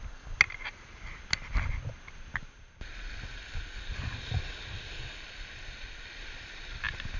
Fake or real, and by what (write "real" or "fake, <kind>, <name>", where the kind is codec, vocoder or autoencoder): real